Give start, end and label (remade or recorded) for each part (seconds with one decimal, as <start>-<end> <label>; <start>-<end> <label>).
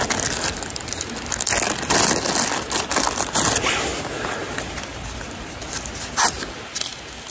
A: 0.0-7.3 recorded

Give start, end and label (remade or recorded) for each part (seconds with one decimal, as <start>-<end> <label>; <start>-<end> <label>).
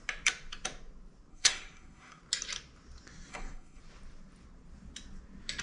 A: 0.0-1.3 recorded; 1.3-2.2 remade; 2.2-3.3 recorded; 3.3-3.8 remade; 3.8-5.6 recorded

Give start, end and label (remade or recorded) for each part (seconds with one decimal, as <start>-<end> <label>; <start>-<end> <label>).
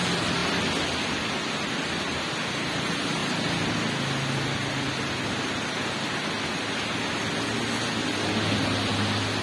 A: 0.0-9.4 recorded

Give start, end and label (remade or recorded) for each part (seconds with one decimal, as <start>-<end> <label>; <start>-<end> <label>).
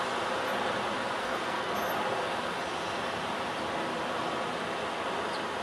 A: 0.0-1.2 recorded; 1.2-1.7 remade; 1.7-5.6 recorded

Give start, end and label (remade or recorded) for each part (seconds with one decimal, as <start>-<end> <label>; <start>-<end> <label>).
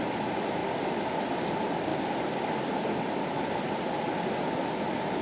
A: 0.0-5.2 recorded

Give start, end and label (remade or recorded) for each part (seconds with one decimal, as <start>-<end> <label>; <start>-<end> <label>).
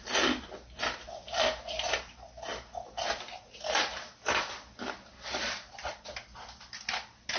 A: 0.0-7.4 recorded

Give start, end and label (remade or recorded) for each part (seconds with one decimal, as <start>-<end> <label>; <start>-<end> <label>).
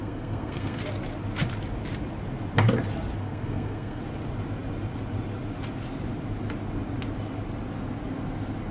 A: 0.0-0.8 remade; 0.8-3.2 recorded; 3.2-4.0 remade; 4.0-8.7 recorded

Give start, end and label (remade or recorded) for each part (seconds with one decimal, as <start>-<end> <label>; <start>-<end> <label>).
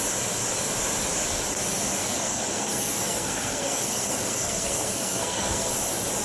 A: 0.0-2.0 recorded; 2.0-5.7 remade; 5.7-6.2 recorded